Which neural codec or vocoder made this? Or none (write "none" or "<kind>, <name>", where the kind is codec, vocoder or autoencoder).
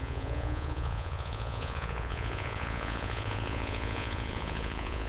vocoder, Vocos